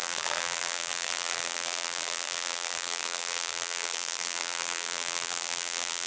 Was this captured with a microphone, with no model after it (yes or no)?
no